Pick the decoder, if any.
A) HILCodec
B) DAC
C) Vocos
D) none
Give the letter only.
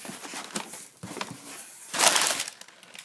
D